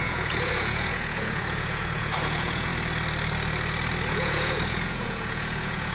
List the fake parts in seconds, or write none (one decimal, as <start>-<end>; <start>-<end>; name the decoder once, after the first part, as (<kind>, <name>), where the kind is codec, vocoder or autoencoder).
0.0-2.7 (vocoder, Vocos); 4.1-5.9